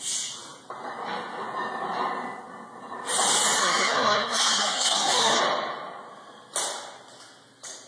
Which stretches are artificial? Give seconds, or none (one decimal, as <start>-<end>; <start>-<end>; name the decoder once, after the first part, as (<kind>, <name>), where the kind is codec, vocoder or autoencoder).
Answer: 3.6-5.4 (codec, SNAC)